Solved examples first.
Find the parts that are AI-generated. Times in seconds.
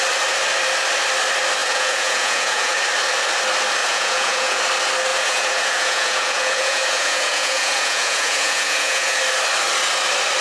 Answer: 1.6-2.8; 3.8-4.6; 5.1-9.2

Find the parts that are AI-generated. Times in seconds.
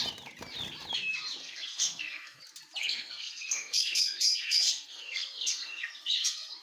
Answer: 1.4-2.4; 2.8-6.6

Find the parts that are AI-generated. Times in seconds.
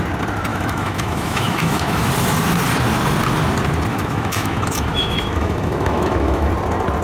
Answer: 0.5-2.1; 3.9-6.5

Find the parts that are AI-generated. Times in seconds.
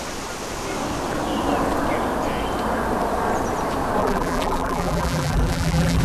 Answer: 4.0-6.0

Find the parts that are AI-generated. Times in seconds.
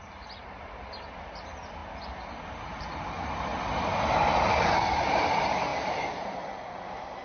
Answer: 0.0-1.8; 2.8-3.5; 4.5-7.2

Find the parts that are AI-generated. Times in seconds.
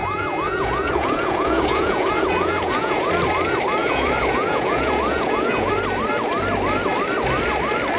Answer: 0.0-3.1; 3.8-5.7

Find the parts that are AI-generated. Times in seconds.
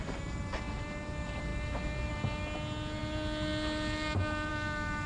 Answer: none